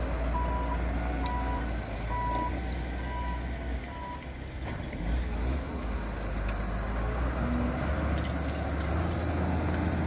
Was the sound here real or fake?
real